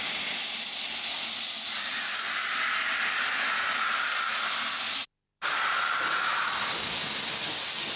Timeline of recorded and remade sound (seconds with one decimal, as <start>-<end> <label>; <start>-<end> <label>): 0.0-5.0 recorded; 5.0-5.5 remade; 5.5-8.0 recorded